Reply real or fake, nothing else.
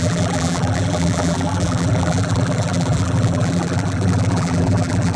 fake